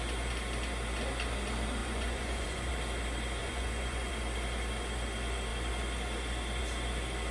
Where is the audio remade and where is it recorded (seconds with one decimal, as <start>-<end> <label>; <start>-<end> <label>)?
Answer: 0.0-1.8 recorded; 1.8-2.7 remade; 2.7-3.4 recorded; 3.4-4.1 remade; 4.1-7.3 recorded

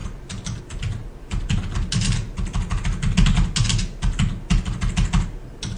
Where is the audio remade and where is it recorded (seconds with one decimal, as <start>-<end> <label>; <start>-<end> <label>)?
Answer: 0.0-5.8 recorded

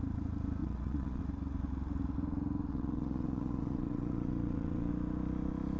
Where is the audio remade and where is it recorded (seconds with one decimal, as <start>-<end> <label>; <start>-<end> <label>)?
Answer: 0.0-0.6 recorded; 0.6-1.2 remade; 1.2-2.7 recorded; 2.7-4.9 remade; 4.9-5.8 recorded

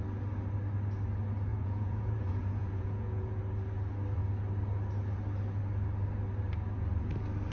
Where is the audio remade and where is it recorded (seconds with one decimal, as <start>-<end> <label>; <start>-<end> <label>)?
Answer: 0.0-1.5 recorded; 1.5-3.4 remade; 3.4-7.5 recorded